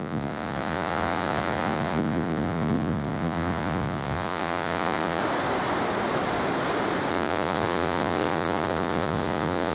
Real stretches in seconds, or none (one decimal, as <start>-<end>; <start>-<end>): 5.2-7.1